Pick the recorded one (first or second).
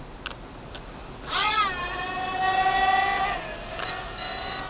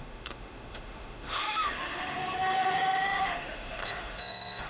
first